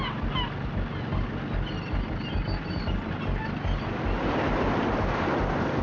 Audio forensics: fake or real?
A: real